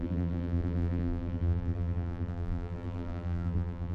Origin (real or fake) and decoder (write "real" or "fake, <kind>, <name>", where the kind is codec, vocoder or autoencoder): fake, vocoder, BigVGAN v2